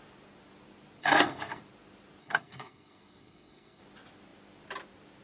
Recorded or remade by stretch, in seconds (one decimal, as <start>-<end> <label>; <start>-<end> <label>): 0.0-1.0 recorded; 1.0-1.6 remade; 1.6-2.2 recorded; 2.2-3.8 remade; 3.8-5.2 recorded